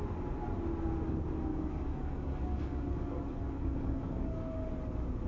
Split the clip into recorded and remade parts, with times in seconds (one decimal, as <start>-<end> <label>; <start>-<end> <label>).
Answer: 0.0-1.5 recorded; 1.5-4.7 remade; 4.7-5.3 recorded